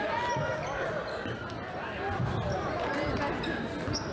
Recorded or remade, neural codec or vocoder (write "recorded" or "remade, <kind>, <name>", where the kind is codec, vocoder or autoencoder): recorded